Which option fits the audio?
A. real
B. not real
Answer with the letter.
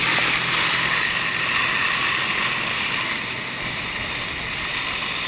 A